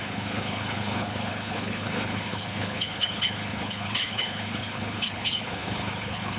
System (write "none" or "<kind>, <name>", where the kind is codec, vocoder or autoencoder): codec, HILCodec